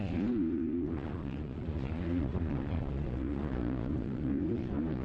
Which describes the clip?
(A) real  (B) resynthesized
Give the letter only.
B